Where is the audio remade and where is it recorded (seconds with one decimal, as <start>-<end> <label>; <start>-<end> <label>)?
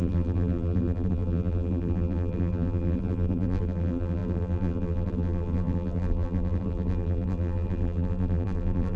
0.0-9.0 remade